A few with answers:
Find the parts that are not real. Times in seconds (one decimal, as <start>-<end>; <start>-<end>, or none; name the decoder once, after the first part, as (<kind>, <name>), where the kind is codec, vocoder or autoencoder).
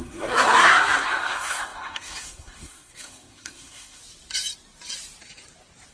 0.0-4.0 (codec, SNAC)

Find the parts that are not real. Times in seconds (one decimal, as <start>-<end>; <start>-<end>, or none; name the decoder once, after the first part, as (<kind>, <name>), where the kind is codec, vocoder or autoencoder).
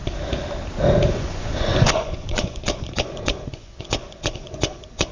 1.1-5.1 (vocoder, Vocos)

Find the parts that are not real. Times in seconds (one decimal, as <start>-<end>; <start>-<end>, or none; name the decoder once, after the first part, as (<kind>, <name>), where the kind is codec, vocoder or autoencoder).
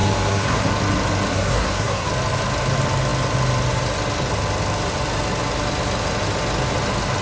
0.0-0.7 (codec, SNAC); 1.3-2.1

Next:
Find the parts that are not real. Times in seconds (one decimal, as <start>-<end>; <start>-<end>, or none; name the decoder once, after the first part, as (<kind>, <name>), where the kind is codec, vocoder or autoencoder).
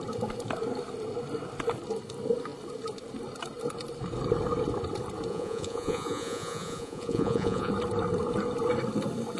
5.3-7.7 (vocoder, Vocos)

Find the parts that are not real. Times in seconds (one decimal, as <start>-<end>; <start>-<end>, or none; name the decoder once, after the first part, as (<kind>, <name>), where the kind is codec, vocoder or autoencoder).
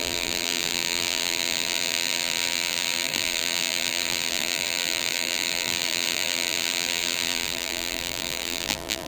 0.0-9.1 (vocoder, BigVGAN v2)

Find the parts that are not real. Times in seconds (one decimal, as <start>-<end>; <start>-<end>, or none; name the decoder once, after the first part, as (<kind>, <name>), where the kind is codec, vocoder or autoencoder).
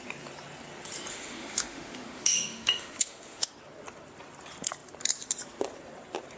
1.1-3.5 (autoencoder, DAC-VAE)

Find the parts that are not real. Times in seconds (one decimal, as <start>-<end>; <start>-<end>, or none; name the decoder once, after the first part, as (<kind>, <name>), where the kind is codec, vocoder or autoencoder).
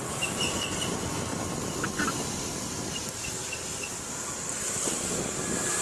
none